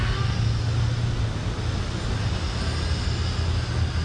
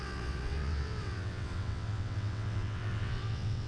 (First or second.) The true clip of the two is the first